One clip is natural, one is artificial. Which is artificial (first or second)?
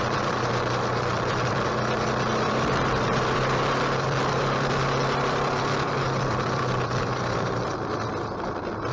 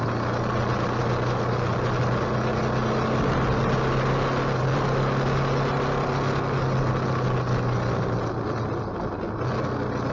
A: first